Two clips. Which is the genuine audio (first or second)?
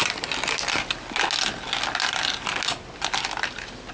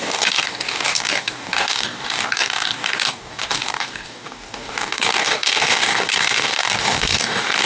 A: first